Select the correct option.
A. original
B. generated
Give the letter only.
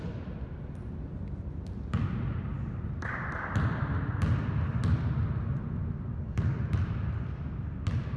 A